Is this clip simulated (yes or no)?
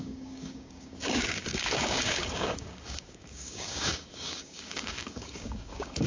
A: yes